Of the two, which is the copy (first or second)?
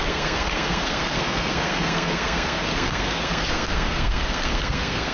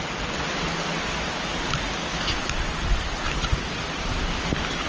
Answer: first